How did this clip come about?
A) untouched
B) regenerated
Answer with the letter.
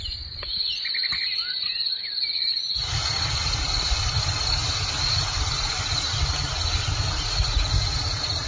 A